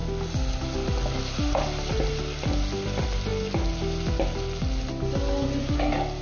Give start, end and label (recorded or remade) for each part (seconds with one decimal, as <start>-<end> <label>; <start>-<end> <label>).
0.0-6.2 recorded